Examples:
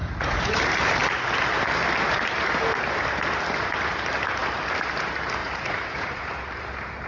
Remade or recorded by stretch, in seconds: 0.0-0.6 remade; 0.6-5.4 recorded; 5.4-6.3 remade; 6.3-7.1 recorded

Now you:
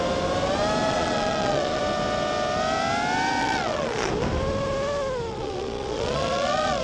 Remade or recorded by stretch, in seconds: 0.0-0.9 recorded; 0.9-1.8 remade; 1.8-3.4 recorded; 3.4-4.1 remade; 4.1-5.3 recorded; 5.3-6.8 remade

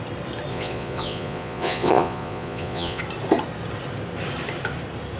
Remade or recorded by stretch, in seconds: 0.0-0.5 recorded; 0.5-3.0 remade; 3.0-5.2 recorded

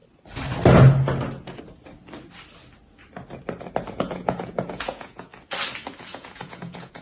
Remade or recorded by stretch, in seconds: 0.0-3.9 recorded; 3.9-5.3 remade; 5.3-6.0 recorded; 6.0-7.0 remade

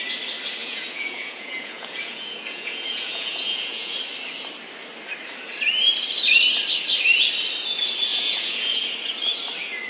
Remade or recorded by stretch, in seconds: 0.0-0.6 recorded; 0.6-4.0 remade; 4.0-8.1 recorded; 8.1-8.8 remade; 8.8-9.9 recorded

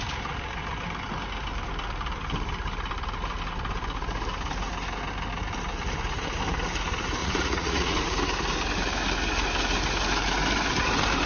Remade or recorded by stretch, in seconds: 0.0-7.2 recorded; 7.2-8.0 remade; 8.0-11.3 recorded

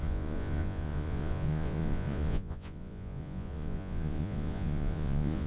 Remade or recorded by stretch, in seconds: 0.0-5.5 remade